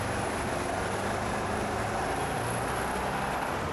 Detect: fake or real real